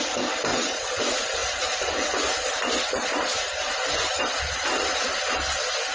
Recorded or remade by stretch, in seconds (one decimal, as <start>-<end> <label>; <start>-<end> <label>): 0.0-0.5 recorded; 0.5-1.0 remade; 1.0-5.9 recorded